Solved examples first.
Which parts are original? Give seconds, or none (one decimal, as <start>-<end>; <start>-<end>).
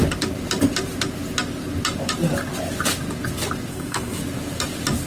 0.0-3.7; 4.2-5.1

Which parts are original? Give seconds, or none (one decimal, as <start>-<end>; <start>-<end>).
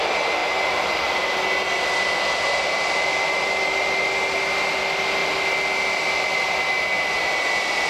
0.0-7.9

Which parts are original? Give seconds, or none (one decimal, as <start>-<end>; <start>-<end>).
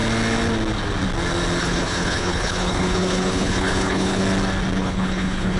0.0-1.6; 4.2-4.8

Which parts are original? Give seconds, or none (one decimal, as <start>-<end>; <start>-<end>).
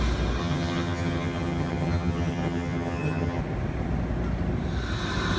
0.0-0.4; 3.4-5.4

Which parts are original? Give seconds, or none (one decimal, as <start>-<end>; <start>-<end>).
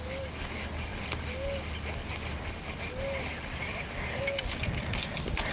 0.0-5.5